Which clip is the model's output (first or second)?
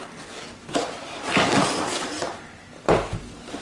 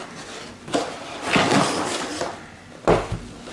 first